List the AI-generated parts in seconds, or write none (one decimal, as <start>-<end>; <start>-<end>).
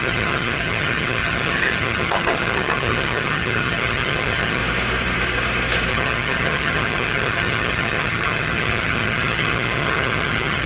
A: 0.0-4.6; 5.9-10.7